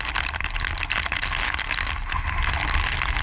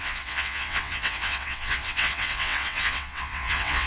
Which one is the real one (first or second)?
first